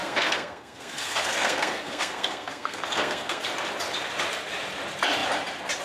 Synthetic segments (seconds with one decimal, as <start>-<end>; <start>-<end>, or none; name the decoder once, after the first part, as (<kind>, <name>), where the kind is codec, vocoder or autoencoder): 0.0-3.4 (codec, SNAC)